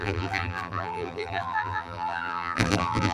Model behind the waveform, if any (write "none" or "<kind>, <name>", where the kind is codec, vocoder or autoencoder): vocoder, BigVGAN v2